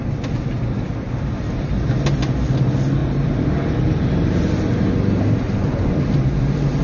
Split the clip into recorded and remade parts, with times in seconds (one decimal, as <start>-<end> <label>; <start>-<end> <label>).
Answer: 0.0-3.0 recorded; 3.0-5.8 remade; 5.8-6.8 recorded